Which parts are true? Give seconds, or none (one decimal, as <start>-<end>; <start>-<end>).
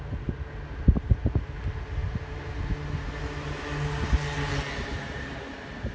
0.0-5.9